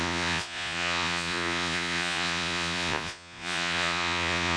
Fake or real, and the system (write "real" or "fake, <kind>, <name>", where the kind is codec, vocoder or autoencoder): fake, vocoder, Vocos